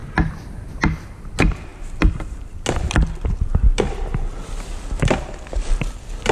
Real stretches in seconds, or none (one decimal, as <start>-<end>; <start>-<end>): 0.0-6.3